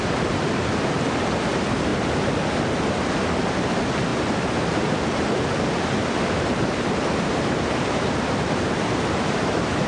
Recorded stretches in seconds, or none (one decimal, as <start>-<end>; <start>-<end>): 1.9-3.5